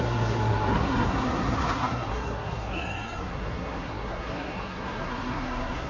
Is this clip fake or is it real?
fake